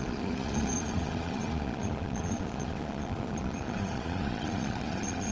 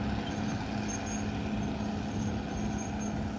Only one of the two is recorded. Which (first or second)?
second